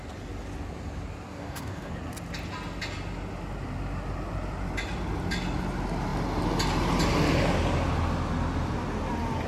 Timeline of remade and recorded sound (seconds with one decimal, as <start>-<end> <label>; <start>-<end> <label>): 0.0-1.3 recorded; 1.3-1.9 remade; 1.9-9.5 recorded